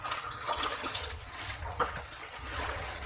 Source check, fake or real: fake